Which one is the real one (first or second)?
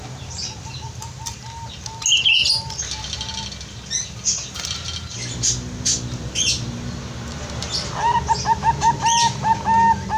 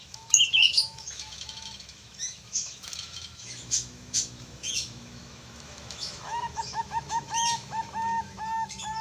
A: first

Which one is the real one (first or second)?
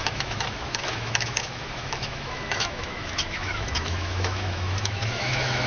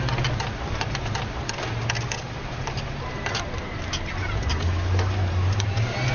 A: second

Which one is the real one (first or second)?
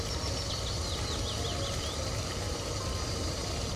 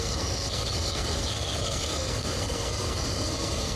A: first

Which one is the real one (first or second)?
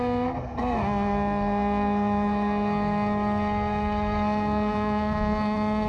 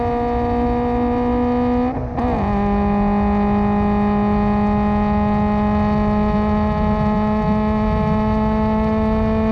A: second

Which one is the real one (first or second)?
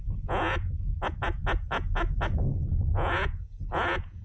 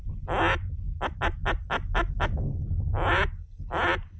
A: second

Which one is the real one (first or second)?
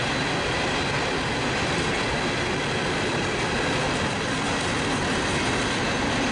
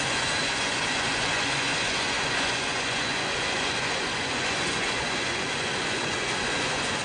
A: first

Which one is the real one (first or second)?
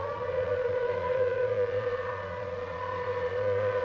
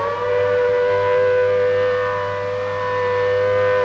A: second